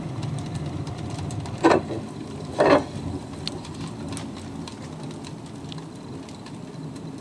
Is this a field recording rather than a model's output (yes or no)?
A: yes